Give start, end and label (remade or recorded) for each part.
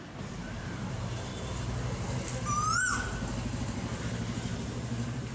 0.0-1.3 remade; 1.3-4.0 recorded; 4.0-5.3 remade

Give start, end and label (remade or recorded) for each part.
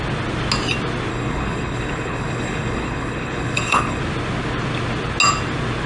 0.0-1.1 recorded; 1.1-4.0 remade; 4.0-5.9 recorded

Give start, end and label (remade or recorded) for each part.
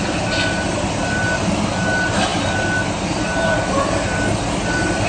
0.0-5.1 recorded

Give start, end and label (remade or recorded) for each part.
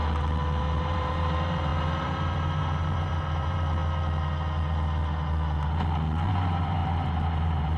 0.0-0.6 recorded; 0.6-3.8 remade; 3.8-6.3 recorded; 6.3-7.8 remade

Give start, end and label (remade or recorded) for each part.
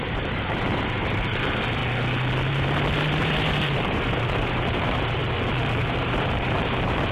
0.0-1.8 remade; 1.8-2.5 recorded; 2.5-5.2 remade; 5.2-5.8 recorded; 5.8-7.1 remade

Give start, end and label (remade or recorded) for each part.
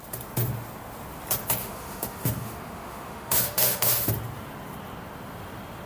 0.0-1.6 recorded; 1.6-4.1 remade; 4.1-5.9 recorded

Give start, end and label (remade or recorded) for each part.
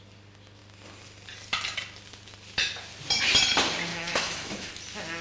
0.0-3.9 recorded; 3.9-4.7 remade; 4.7-5.2 recorded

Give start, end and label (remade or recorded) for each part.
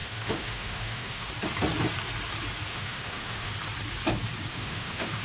0.0-1.3 remade; 1.3-2.7 recorded; 2.7-3.5 remade; 3.5-4.5 recorded; 4.5-5.2 remade